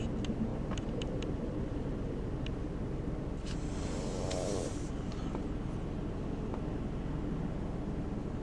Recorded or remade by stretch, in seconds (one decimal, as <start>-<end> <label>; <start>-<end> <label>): 0.0-0.5 recorded; 0.5-1.9 remade; 1.9-8.4 recorded